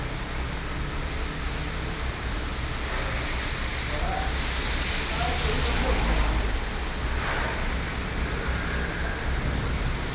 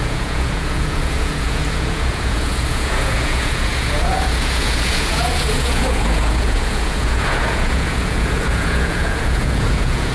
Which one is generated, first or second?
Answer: second